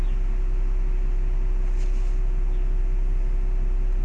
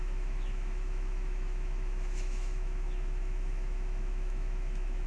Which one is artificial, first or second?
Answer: second